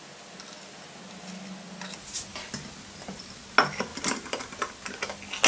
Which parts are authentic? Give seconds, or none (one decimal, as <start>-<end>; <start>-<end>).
0.0-5.5